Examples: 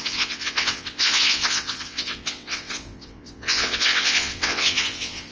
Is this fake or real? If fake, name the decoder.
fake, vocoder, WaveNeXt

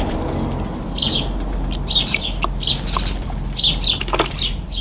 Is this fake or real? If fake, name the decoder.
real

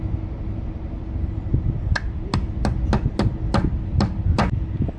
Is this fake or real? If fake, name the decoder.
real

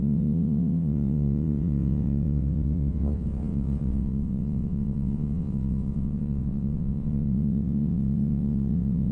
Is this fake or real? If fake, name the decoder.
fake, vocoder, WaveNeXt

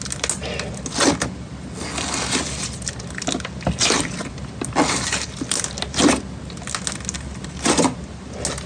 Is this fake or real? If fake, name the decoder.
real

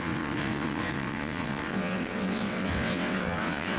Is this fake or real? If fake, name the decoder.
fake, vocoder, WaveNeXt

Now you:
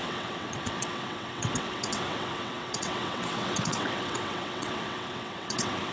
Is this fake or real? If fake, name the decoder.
fake, vocoder, WaveNeXt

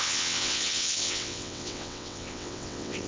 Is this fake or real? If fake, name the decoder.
fake, vocoder, WaveNeXt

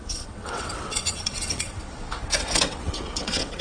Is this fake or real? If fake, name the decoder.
fake, vocoder, WaveNeXt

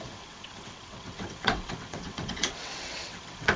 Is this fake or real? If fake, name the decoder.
fake, vocoder, WaveNeXt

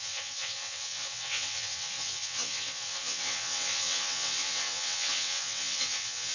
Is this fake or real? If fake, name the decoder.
fake, vocoder, WaveNeXt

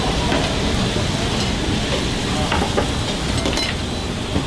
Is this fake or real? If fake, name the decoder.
real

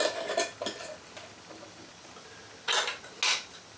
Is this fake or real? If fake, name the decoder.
real